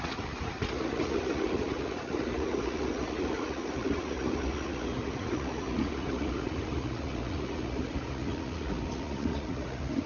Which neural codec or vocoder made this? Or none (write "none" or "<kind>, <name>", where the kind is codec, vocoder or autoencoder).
vocoder, Vocos